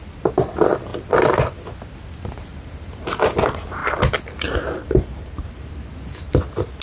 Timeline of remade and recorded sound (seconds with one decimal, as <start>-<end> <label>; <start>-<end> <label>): 0.0-2.5 recorded; 2.5-3.2 remade; 3.2-3.8 recorded; 3.8-6.8 remade